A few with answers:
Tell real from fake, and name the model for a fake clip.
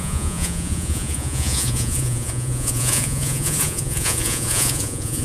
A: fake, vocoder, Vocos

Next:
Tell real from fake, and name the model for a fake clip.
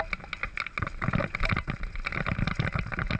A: real